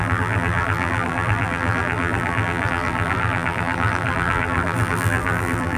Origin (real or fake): fake